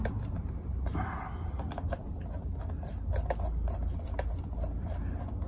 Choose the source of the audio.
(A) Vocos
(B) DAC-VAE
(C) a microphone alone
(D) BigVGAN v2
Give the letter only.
C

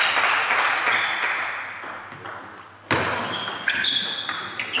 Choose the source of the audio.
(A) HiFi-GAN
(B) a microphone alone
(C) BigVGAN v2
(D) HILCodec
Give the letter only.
B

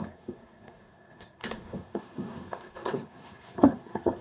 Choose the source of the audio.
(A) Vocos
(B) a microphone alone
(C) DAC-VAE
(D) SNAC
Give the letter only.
D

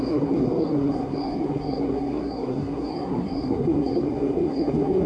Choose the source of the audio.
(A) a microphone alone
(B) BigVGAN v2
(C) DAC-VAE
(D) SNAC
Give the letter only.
D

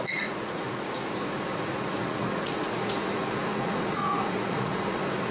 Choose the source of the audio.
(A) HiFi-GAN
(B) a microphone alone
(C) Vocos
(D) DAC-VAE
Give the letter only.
C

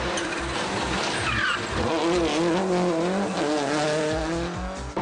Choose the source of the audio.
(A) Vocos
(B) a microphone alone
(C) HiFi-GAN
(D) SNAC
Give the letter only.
B